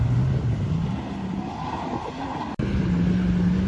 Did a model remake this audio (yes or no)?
no